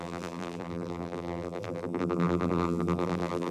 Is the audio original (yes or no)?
no